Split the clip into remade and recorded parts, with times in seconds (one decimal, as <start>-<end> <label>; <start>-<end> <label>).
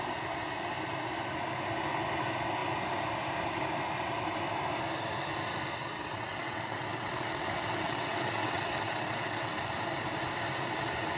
0.0-5.8 recorded; 5.8-9.6 remade; 9.6-11.2 recorded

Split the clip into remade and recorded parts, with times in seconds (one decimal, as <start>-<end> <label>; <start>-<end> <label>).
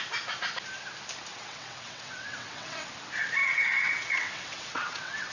0.0-1.3 recorded; 1.3-2.9 remade; 2.9-3.4 recorded; 3.4-5.3 remade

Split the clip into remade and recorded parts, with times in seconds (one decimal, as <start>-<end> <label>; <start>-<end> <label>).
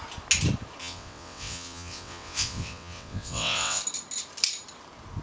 0.0-0.8 recorded; 0.8-3.8 remade; 3.8-5.2 recorded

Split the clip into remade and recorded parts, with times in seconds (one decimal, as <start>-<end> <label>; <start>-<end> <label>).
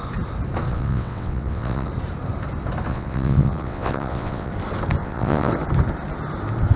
0.0-0.7 recorded; 0.7-1.9 remade; 1.9-2.9 recorded; 2.9-4.5 remade; 4.5-5.0 recorded; 5.0-5.5 remade; 5.5-6.8 recorded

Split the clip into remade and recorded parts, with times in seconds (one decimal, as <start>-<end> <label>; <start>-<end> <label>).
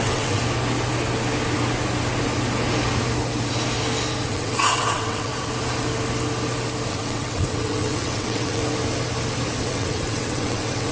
0.0-0.4 remade; 0.4-4.3 recorded; 4.3-5.3 remade; 5.3-6.9 recorded; 6.9-8.6 remade; 8.6-9.6 recorded; 9.6-10.9 remade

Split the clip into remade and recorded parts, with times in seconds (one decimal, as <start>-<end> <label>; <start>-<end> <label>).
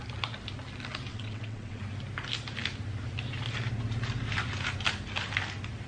0.0-1.1 recorded; 1.1-1.8 remade; 1.8-5.9 recorded